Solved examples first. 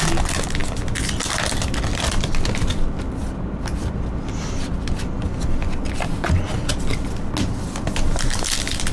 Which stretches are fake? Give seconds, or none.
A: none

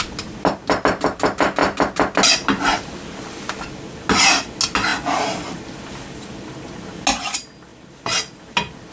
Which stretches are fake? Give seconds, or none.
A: none